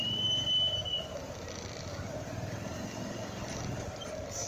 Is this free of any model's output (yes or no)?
yes